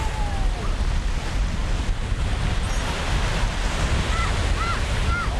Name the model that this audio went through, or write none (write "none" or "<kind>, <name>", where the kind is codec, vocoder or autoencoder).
none